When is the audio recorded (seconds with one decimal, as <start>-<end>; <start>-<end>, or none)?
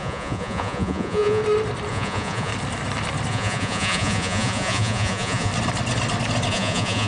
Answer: 1.4-1.9; 2.5-3.3; 5.5-6.5